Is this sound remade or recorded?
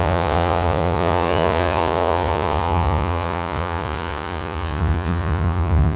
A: remade